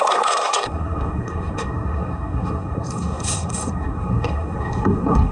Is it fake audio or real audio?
fake